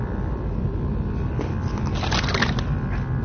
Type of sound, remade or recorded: recorded